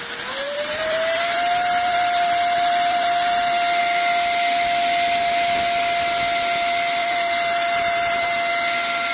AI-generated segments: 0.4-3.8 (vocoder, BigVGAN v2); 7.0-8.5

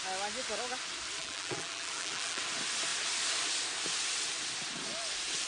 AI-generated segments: 1.2-2.4 (vocoder, BigVGAN v2)